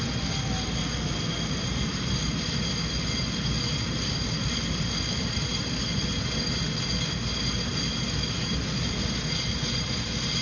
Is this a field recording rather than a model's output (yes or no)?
yes